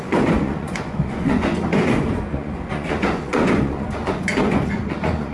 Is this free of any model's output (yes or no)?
no